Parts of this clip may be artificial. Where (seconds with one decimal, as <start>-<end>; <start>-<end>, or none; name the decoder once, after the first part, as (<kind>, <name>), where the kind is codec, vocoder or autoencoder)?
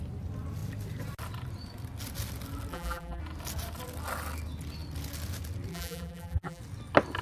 2.7-3.2 (vocoder, BigVGAN v2); 5.7-6.6